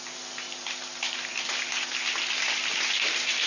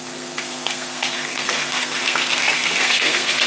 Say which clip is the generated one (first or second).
second